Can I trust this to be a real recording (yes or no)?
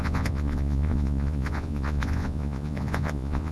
no